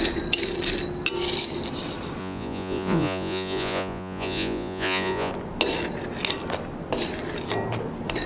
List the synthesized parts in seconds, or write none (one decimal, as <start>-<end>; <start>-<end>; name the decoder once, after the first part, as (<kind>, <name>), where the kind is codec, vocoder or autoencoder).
2.2-5.3 (vocoder, Vocos)